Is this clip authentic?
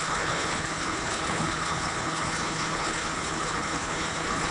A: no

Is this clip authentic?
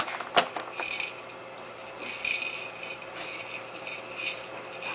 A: yes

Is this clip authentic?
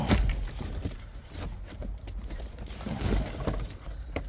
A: no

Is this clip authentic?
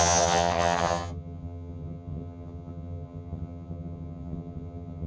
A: no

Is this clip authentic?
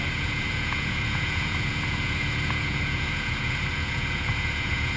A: no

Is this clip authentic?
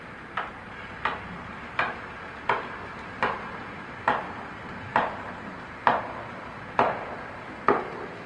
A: yes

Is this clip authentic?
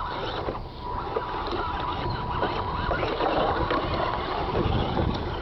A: yes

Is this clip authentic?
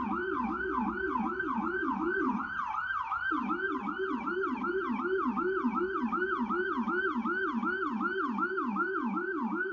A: yes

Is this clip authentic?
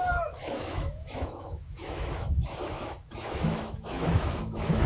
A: no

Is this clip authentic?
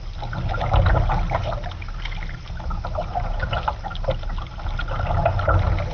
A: yes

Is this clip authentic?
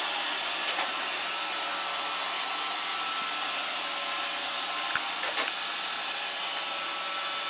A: yes